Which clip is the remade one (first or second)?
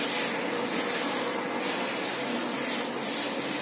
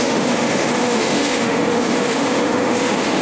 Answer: second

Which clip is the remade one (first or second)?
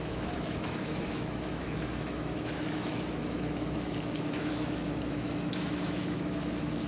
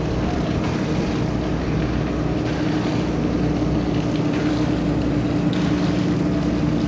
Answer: first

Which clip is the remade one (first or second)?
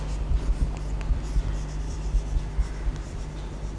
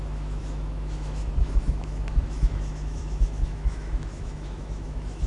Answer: second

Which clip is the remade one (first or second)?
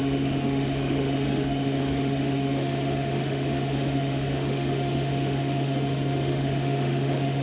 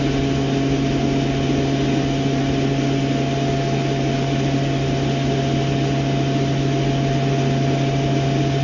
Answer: first